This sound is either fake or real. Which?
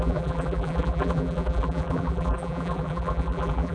fake